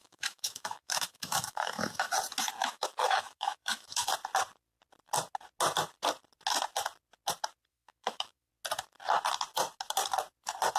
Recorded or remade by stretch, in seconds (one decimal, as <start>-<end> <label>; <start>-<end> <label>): 0.0-2.1 remade; 2.1-2.6 recorded; 2.6-4.1 remade; 4.1-7.7 recorded; 7.7-8.5 remade; 8.5-10.8 recorded